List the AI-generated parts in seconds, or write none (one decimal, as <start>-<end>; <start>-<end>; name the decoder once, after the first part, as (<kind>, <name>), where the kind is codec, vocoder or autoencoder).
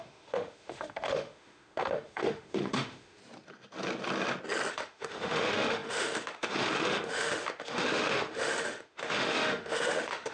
0.0-3.2 (autoencoder, DAC-VAE); 4.7-10.3